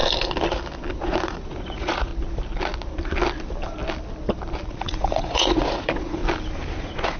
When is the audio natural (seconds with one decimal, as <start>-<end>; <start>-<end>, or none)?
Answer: 0.0-1.0; 2.1-4.7; 6.2-6.8